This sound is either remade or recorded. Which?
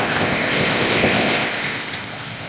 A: remade